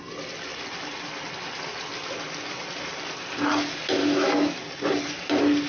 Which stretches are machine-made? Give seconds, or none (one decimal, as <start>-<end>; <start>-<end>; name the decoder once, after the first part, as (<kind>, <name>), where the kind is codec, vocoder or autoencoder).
4.0-4.6 (autoencoder, DAC-VAE)